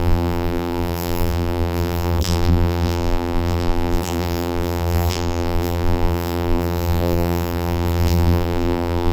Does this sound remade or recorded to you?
remade